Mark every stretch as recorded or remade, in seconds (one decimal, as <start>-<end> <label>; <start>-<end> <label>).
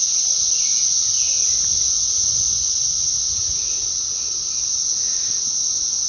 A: 0.0-6.1 recorded